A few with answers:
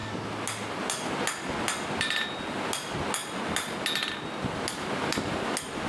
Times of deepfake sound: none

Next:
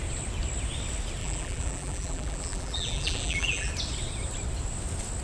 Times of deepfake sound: 1.2-3.7 (vocoder, BigVGAN v2)

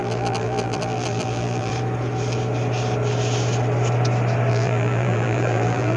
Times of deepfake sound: 0.0-1.7 (vocoder, BigVGAN v2); 4.5-6.0

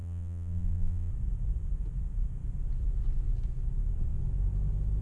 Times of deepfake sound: 0.0-1.1 (vocoder, BigVGAN v2)

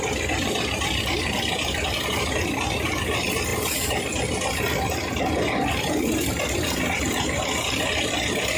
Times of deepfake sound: none

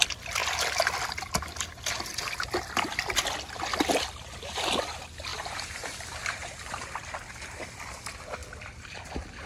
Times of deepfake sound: 5.3-6.6 (vocoder, BigVGAN v2)

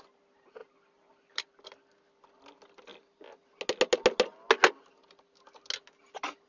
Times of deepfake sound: 0.6-1.7 (vocoder, BigVGAN v2)

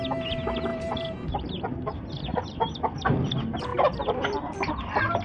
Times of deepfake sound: 0.7-2.6 (vocoder, BigVGAN v2); 3.7-4.2